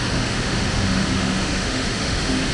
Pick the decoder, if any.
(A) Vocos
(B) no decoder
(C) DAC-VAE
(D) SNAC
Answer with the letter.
C